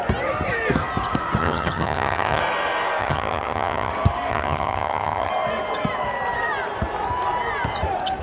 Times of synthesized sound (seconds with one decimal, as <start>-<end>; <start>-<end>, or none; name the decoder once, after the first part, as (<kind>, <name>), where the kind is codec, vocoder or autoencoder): 1.4-2.4 (vocoder, HiFi-GAN); 3.0-3.9; 4.3-5.3